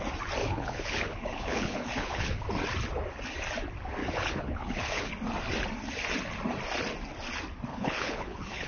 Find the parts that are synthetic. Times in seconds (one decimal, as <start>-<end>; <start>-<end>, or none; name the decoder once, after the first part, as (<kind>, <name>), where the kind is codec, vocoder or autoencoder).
0.4-2.4 (codec, HILCodec); 4.0-5.1; 7.7-8.7